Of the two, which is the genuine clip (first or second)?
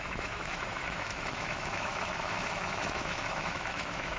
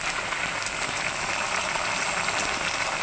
second